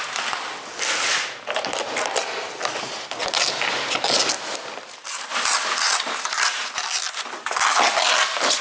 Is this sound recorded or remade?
recorded